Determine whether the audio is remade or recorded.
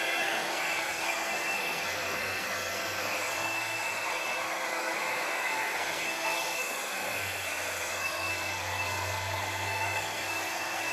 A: remade